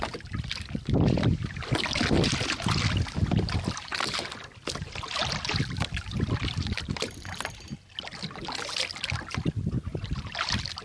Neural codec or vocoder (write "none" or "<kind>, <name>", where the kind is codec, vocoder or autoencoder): none